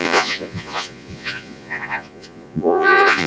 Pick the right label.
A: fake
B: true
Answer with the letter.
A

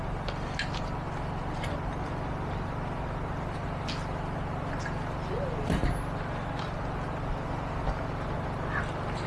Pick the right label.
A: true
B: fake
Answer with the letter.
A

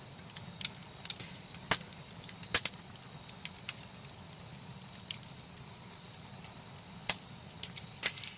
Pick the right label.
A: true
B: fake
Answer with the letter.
A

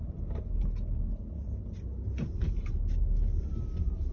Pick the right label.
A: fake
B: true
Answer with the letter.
B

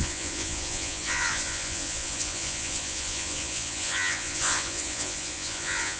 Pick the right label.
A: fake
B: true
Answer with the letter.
A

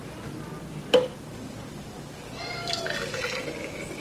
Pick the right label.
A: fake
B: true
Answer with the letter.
B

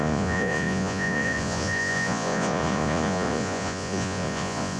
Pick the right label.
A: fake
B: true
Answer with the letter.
A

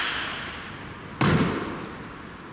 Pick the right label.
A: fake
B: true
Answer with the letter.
B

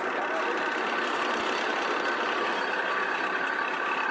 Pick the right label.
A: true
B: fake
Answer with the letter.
A